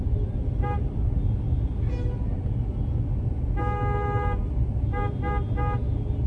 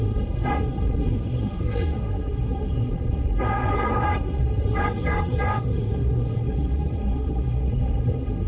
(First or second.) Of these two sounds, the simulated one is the second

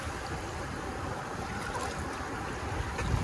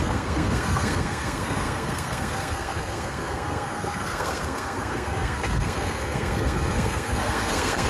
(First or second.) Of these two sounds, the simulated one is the second